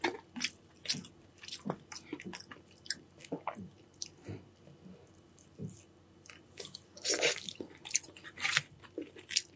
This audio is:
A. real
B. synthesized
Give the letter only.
A